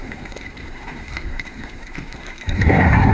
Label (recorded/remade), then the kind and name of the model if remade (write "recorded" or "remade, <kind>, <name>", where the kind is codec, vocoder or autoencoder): remade, codec, SNAC